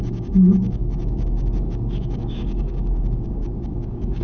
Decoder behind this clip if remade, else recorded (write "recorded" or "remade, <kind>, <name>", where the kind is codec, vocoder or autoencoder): remade, codec, DAC